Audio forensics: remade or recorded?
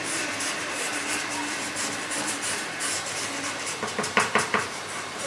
remade